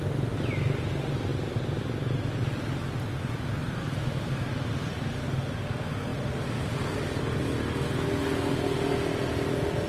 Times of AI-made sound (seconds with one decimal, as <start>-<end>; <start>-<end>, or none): 6.1-7.2